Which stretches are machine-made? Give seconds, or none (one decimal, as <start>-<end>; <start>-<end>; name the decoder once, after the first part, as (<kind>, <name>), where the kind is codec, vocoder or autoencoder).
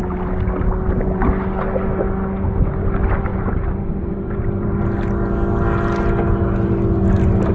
3.3-4.8 (vocoder, BigVGAN v2)